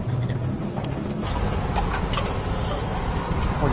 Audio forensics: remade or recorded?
recorded